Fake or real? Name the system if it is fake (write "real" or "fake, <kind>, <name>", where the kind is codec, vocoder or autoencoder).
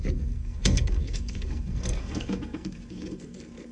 fake, codec, SNAC